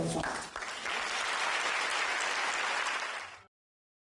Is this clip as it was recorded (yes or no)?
yes